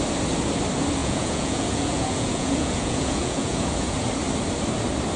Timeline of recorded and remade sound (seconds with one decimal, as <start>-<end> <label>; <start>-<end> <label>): 0.0-1.0 recorded; 1.0-4.1 remade; 4.1-5.2 recorded